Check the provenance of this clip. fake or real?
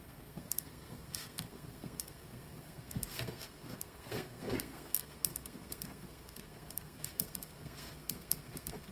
fake